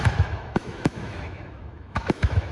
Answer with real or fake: fake